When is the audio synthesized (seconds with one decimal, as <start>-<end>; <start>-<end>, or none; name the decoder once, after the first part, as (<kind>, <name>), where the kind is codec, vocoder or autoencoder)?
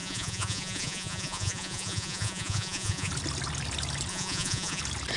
0.0-3.1 (vocoder, Vocos); 4.1-4.8